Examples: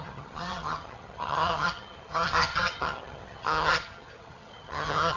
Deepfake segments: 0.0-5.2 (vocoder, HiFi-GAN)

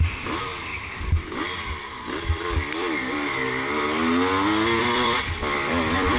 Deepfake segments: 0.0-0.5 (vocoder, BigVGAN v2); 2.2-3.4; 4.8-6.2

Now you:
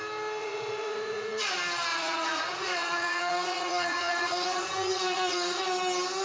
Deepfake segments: 0.4-1.5 (vocoder, Vocos); 1.9-5.6

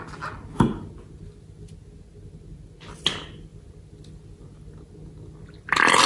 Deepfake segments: none

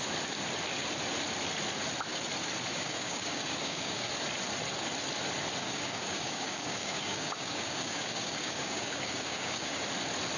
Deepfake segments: 2.7-4.1 (codec, DAC); 5.6-9.8

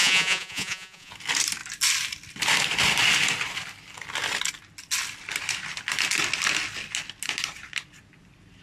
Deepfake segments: 0.0-1.1 (vocoder, Vocos)